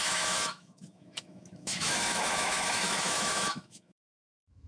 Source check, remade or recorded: remade